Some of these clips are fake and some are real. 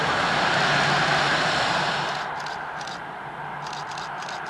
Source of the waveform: real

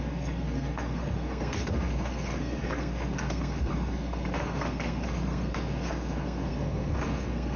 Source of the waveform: fake